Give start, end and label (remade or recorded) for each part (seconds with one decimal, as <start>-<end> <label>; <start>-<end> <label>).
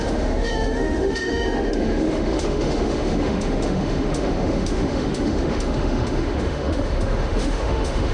0.0-8.1 remade